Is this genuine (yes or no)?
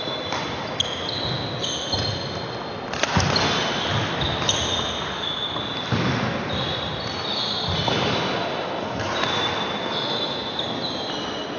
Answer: yes